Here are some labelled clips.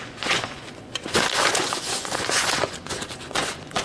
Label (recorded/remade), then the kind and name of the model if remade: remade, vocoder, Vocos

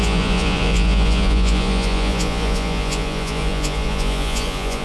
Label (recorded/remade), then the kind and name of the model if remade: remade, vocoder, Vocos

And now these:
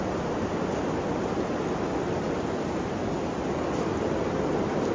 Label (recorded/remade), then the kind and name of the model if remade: recorded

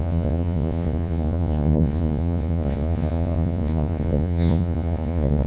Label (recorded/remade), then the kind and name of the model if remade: remade, vocoder, Vocos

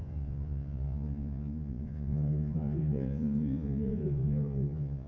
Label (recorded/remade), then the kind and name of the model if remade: remade, vocoder, Vocos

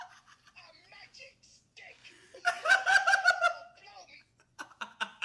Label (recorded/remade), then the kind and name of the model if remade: remade, vocoder, Vocos